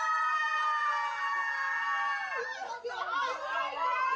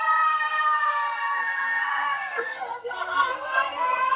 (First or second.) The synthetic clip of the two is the second